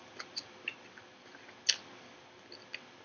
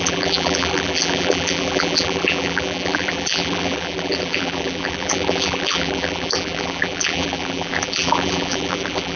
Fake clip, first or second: second